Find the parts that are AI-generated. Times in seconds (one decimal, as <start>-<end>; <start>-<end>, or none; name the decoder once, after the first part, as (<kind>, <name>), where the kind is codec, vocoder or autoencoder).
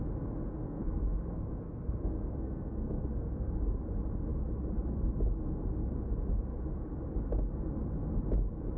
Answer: 0.6-3.5 (codec, SNAC)